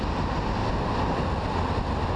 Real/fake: real